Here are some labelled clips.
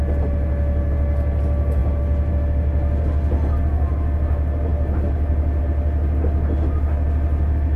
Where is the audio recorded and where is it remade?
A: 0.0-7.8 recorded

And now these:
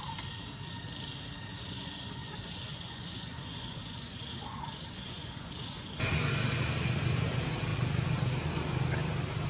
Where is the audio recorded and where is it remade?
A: 0.0-1.5 recorded; 1.5-6.3 remade; 6.3-9.5 recorded

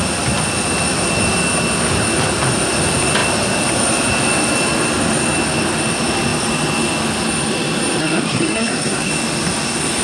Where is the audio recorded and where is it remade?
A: 0.0-8.0 recorded; 8.0-9.1 remade; 9.1-10.0 recorded

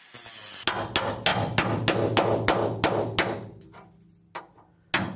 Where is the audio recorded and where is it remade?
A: 0.0-5.2 recorded

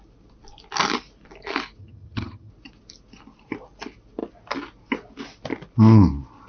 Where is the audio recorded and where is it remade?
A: 0.0-1.8 recorded; 1.8-2.5 remade; 2.5-6.5 recorded

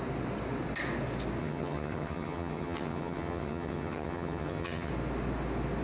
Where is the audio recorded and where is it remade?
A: 0.0-1.4 recorded; 1.4-4.9 remade; 4.9-5.8 recorded